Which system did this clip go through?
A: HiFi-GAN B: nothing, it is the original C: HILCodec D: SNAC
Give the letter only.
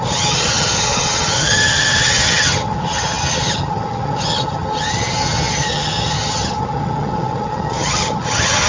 A